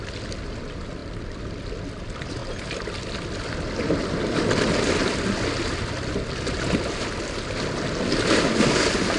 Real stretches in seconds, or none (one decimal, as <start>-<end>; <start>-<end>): 0.0-9.2